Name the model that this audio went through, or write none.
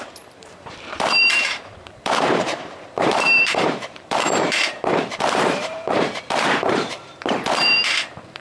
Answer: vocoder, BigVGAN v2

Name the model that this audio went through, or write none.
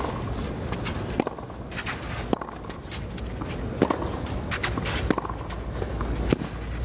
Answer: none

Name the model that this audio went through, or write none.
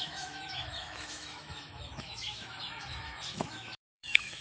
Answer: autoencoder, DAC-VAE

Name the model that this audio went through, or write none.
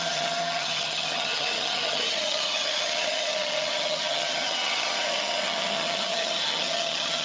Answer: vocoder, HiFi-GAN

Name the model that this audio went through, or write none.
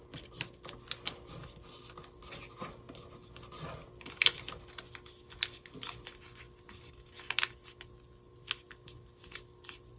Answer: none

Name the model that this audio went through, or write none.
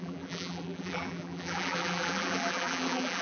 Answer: vocoder, BigVGAN v2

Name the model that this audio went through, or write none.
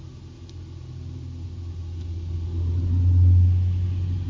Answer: none